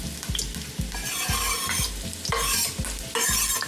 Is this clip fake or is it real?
real